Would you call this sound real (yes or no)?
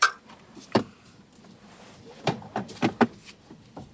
no